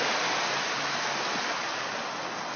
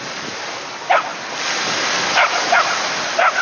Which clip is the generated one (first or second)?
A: second